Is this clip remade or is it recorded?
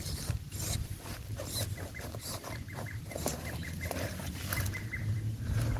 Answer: remade